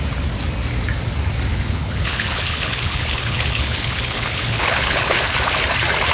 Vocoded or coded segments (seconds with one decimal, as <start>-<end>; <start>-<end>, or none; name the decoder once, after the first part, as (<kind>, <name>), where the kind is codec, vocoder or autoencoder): 1.5-5.2 (codec, HILCodec)